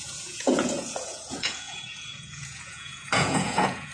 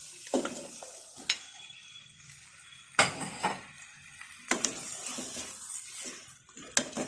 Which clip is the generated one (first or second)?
first